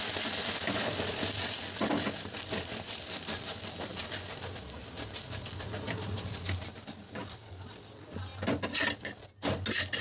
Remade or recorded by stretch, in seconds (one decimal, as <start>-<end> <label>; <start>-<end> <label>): 0.0-10.0 recorded